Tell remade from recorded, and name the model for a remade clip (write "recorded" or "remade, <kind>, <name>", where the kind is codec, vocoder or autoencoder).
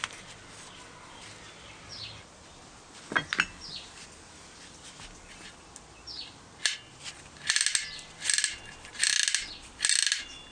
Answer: recorded